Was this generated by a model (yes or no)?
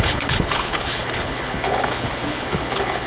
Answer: yes